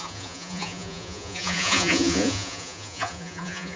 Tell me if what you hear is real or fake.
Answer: fake